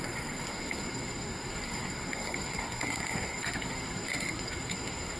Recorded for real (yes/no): no